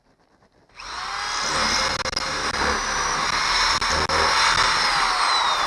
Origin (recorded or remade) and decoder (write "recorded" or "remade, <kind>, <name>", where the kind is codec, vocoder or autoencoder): recorded